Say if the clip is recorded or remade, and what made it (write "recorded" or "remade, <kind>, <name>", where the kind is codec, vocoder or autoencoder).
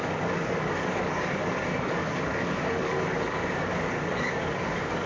remade, codec, DAC